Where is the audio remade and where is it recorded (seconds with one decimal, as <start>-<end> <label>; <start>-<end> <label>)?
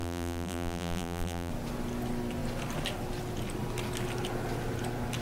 0.0-1.5 remade; 1.5-5.2 recorded